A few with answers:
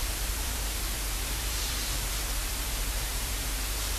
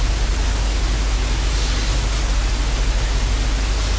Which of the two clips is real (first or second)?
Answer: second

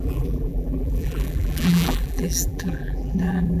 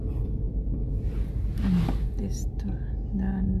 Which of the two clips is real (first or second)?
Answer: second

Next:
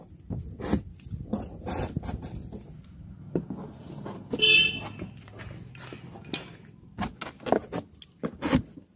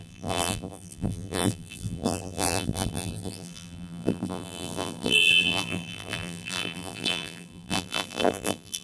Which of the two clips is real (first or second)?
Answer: first